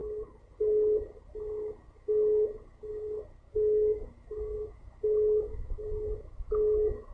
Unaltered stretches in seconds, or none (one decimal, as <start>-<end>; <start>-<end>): 0.0-3.4